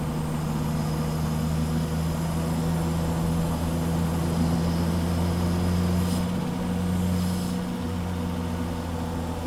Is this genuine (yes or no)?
yes